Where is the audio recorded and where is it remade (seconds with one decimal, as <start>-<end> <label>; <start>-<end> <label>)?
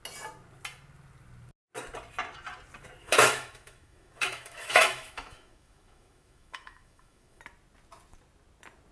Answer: 0.0-3.0 recorded; 3.0-7.4 remade; 7.4-8.9 recorded